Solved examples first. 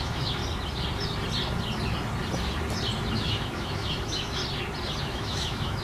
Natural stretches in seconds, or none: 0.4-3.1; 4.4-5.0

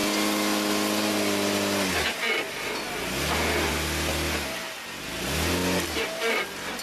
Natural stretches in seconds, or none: 0.0-6.8

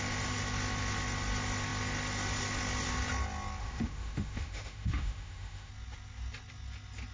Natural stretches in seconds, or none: 0.0-3.6; 5.7-7.1

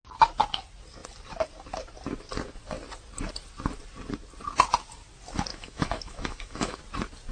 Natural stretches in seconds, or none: 0.0-5.5; 6.8-7.3